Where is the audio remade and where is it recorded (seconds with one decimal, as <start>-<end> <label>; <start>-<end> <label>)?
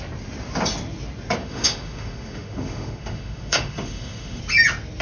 0.0-1.4 recorded; 1.4-4.4 remade; 4.4-5.0 recorded